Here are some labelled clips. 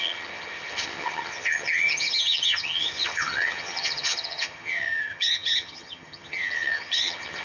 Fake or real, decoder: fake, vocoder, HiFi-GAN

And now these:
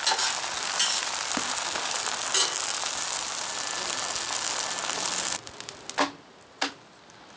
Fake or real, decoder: real